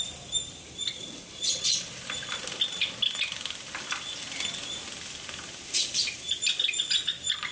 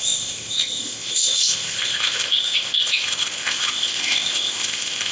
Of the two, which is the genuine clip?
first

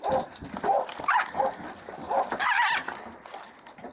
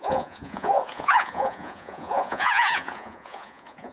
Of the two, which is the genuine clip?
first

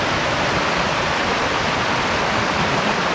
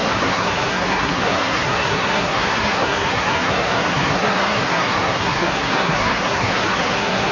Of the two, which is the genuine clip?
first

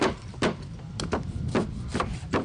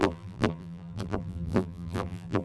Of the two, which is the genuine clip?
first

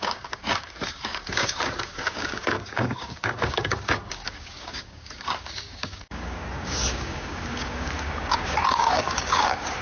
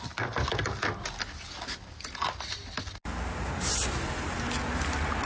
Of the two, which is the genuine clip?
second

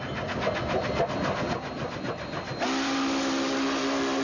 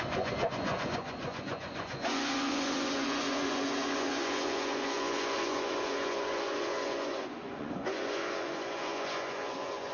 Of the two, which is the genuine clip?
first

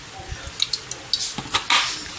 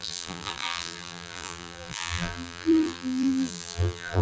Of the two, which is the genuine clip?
first